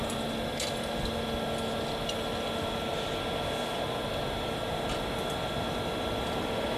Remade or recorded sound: recorded